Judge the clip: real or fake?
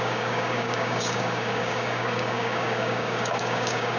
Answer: fake